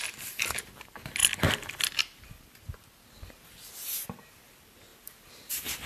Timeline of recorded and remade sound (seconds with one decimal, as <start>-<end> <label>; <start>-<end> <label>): 0.0-5.9 recorded